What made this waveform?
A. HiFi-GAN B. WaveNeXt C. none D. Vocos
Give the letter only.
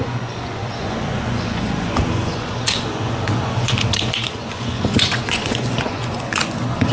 D